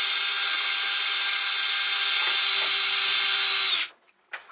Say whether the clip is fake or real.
real